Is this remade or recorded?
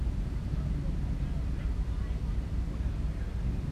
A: recorded